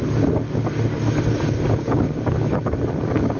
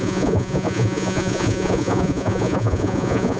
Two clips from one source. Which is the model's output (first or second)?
second